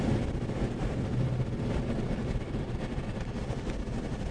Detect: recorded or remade recorded